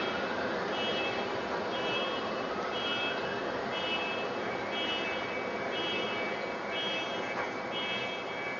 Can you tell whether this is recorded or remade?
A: recorded